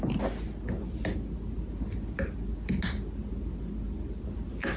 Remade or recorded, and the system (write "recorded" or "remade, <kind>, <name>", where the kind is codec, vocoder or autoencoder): recorded